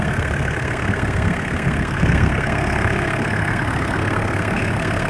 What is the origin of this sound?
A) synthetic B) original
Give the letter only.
A